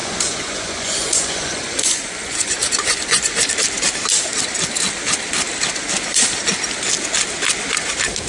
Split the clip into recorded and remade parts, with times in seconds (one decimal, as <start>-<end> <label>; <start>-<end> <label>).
0.0-3.5 remade; 3.5-8.3 recorded